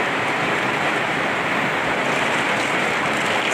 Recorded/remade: recorded